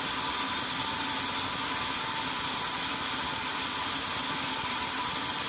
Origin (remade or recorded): recorded